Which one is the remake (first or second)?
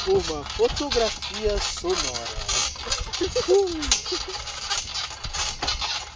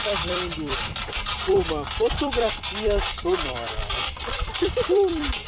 second